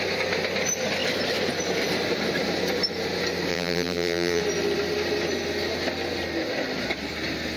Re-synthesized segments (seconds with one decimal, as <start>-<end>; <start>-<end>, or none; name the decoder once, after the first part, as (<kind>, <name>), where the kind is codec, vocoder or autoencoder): 3.5-4.4 (vocoder, BigVGAN v2)